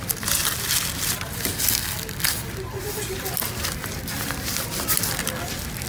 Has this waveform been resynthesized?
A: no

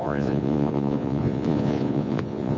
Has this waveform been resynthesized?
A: yes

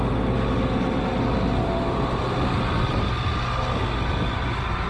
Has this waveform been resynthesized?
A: no